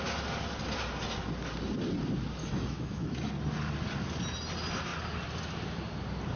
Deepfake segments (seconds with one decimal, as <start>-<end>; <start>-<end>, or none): 2.4-3.3